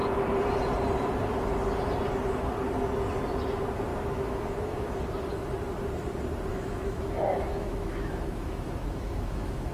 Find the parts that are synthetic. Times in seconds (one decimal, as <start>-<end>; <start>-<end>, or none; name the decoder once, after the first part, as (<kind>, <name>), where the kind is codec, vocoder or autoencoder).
3.9-5.0 (autoencoder, DAC-VAE); 6.5-9.7